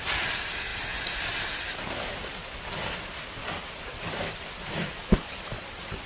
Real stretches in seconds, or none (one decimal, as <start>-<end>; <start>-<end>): 0.0-3.6; 4.6-6.1